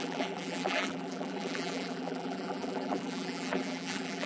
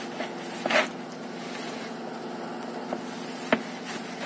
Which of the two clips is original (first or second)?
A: second